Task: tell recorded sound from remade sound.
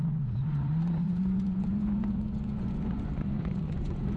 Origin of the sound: remade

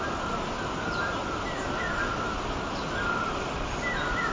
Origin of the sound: recorded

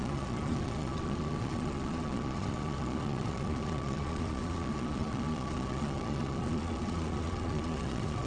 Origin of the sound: remade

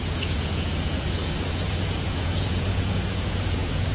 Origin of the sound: remade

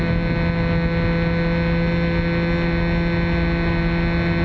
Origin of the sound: recorded